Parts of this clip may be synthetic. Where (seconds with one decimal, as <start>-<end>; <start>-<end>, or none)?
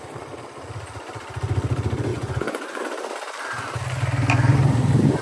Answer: 2.1-2.8